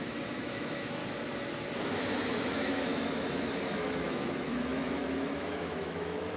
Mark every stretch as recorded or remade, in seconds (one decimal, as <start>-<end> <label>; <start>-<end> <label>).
0.0-1.0 remade; 1.0-1.8 recorded; 1.8-6.4 remade